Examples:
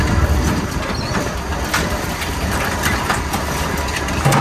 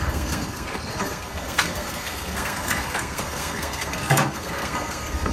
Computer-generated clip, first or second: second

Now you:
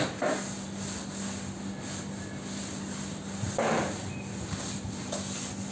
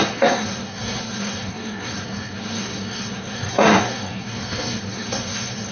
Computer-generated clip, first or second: second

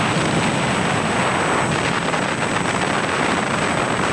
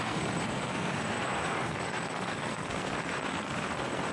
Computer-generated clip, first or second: second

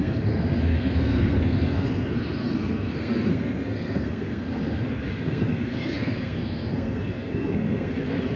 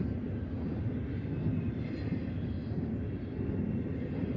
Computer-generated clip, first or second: first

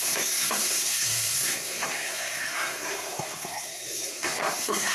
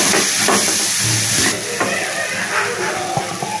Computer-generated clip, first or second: first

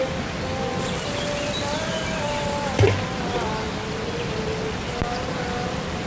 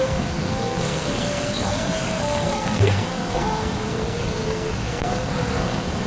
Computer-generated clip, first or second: second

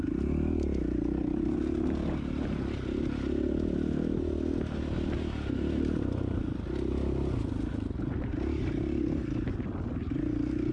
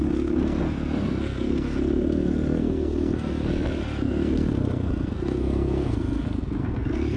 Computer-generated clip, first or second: second